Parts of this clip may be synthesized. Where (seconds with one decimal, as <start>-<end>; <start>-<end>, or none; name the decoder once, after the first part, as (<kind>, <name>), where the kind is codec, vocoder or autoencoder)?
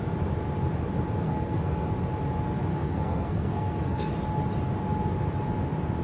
1.2-1.9 (codec, SNAC); 2.7-4.1